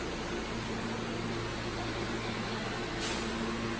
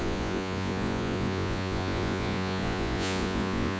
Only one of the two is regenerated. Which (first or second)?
second